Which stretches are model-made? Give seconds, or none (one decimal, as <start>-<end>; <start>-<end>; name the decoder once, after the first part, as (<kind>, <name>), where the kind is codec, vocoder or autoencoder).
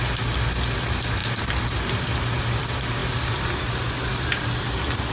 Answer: none